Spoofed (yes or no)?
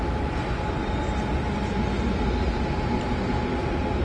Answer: no